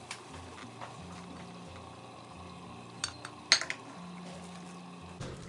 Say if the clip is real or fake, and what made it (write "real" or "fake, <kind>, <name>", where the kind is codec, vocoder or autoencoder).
real